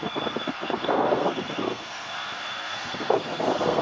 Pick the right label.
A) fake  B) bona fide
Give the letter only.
A